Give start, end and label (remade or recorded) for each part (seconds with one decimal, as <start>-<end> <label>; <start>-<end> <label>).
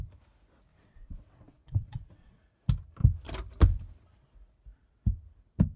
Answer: 0.0-0.7 recorded; 0.7-2.3 remade; 2.3-5.8 recorded